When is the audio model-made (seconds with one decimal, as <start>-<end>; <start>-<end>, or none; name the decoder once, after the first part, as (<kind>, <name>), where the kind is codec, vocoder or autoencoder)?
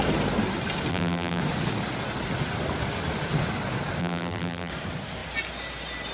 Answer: 0.9-1.4 (vocoder, BigVGAN v2); 4.0-4.7